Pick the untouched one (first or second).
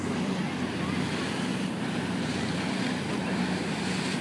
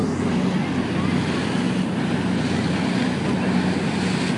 second